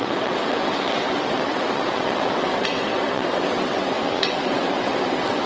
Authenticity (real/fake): fake